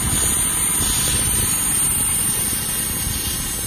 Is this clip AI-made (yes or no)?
no